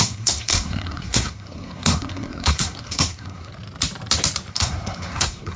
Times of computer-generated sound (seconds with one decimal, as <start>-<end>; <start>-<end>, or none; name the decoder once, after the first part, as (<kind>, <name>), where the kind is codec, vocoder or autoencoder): 0.0-3.5 (codec, SNAC); 4.5-5.6